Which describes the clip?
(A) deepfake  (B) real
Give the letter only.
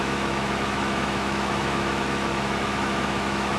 A